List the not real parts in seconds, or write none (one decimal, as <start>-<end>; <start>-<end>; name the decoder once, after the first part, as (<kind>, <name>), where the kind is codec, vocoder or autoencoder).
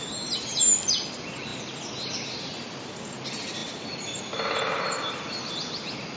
none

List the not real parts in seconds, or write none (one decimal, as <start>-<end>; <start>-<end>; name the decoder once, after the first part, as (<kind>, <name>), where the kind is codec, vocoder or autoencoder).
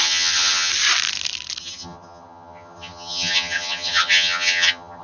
0.0-0.7 (vocoder, HiFi-GAN); 1.6-5.0